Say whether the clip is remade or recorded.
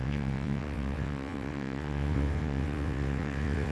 remade